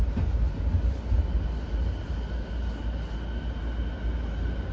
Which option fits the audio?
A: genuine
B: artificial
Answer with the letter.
A